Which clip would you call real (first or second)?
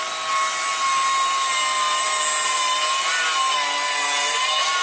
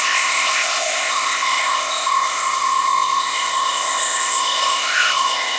first